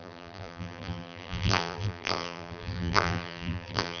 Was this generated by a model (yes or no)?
yes